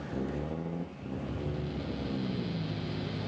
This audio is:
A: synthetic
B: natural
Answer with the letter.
B